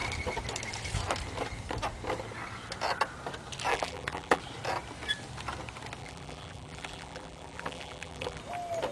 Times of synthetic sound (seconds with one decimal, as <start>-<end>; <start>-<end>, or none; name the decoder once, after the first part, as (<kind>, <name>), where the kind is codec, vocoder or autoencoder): 3.7-4.4 (vocoder, BigVGAN v2); 6.0-8.4